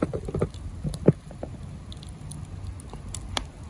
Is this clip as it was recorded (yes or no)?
yes